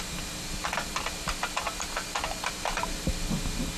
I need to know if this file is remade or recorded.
recorded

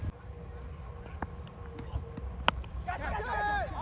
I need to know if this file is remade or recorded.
recorded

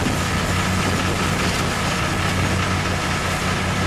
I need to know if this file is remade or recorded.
recorded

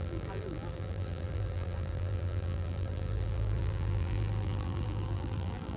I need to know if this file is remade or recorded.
remade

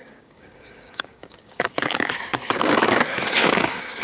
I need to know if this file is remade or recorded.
remade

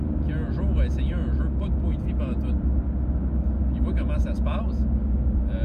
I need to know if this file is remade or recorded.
recorded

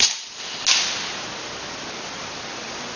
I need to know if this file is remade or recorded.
recorded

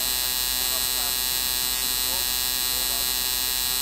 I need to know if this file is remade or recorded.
recorded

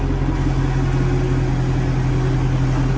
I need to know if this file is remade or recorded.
recorded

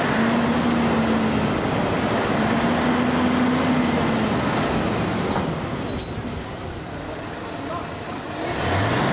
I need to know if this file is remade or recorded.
recorded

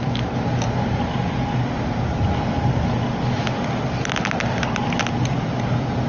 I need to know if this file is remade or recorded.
recorded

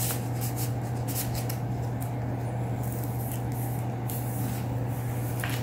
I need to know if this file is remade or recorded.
recorded